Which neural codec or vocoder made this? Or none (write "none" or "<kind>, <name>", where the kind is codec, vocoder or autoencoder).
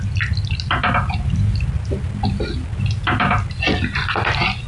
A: none